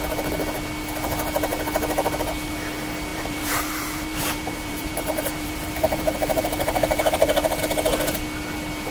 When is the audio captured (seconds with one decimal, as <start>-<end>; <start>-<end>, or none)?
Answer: 0.0-3.1; 7.6-8.9